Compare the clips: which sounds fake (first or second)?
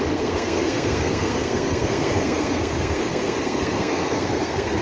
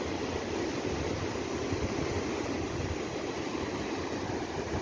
first